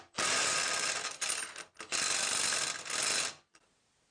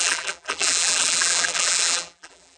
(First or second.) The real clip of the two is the first